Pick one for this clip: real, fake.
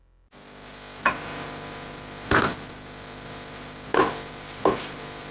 real